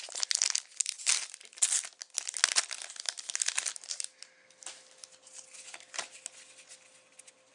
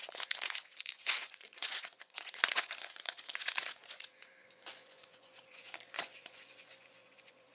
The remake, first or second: second